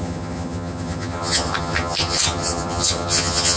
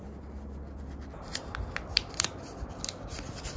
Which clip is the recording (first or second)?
second